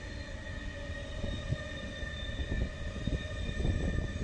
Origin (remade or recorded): recorded